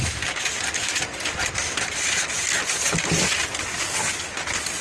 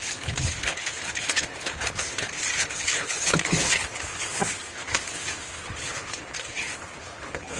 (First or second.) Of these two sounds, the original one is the first